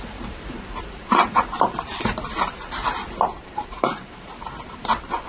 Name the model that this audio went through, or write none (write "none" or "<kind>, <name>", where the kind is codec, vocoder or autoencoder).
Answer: vocoder, BigVGAN v2